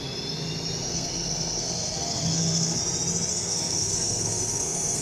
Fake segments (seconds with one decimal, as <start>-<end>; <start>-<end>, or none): 0.9-2.8; 3.3-5.0